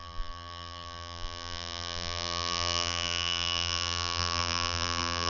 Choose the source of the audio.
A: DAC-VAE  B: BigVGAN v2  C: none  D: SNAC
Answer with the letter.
B